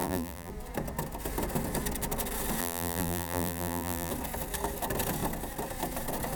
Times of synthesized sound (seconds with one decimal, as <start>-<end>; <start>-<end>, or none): 0.0-0.5; 2.6-4.1